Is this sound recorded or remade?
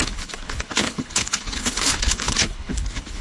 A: remade